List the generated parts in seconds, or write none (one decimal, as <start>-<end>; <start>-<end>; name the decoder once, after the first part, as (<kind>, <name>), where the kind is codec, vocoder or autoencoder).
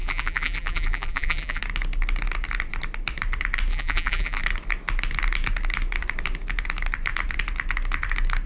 0.0-1.6 (vocoder, BigVGAN v2); 3.7-4.4